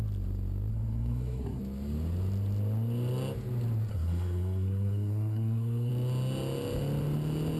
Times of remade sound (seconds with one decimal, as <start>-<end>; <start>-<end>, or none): 0.7-1.6; 3.9-5.9